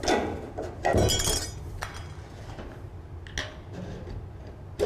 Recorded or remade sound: recorded